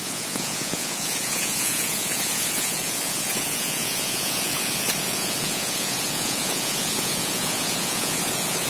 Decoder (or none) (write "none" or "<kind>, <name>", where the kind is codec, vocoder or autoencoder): vocoder, Vocos